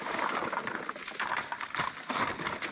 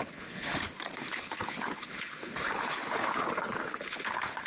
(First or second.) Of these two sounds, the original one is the first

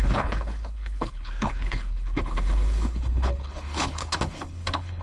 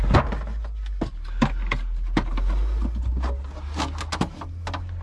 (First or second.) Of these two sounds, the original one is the second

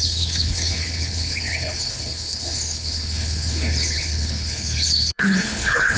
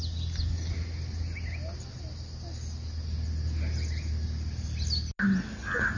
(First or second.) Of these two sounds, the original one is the second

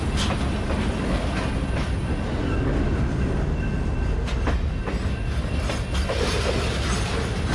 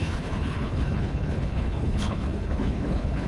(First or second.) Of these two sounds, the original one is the first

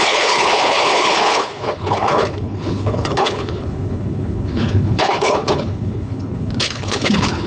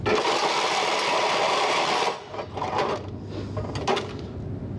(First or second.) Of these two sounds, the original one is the second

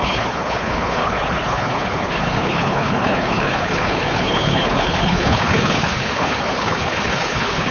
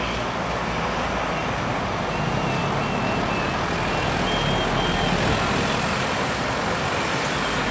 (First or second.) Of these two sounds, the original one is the second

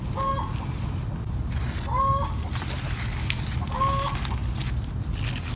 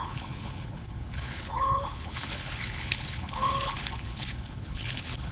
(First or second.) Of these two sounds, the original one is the first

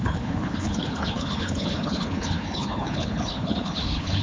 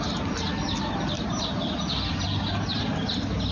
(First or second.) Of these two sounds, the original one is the second